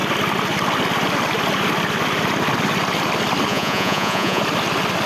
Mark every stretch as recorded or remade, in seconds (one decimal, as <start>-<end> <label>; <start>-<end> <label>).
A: 0.0-3.5 recorded; 3.5-4.4 remade; 4.4-5.1 recorded